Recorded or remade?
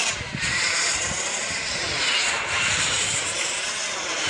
remade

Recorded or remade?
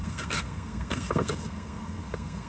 remade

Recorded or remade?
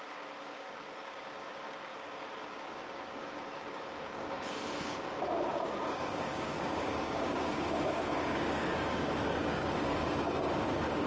remade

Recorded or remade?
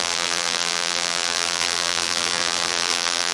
remade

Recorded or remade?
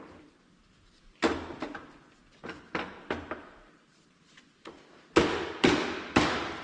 recorded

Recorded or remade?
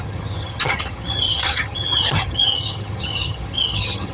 remade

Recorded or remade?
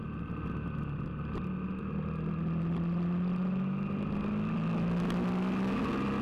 recorded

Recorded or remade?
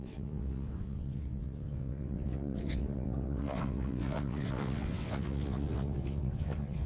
remade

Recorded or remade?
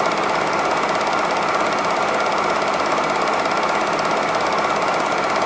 recorded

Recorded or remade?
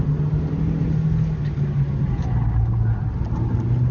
recorded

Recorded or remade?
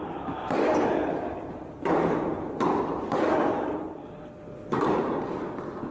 recorded